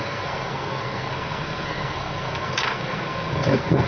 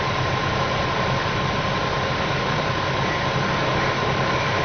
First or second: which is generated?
first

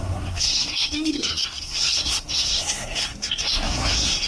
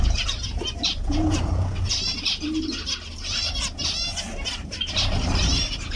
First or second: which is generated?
first